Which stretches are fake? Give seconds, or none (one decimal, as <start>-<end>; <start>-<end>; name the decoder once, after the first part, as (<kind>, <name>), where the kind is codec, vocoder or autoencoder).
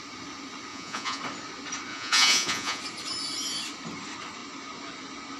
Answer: 0.7-1.2 (vocoder, Vocos); 1.9-2.8